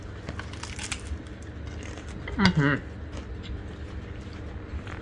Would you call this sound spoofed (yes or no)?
no